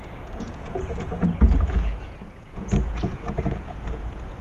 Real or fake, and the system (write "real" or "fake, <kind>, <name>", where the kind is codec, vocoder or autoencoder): fake, vocoder, Vocos